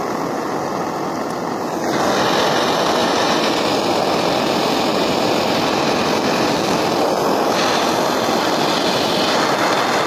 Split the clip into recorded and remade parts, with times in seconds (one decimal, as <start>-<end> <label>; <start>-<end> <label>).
0.0-3.0 recorded; 3.0-3.5 remade; 3.5-10.1 recorded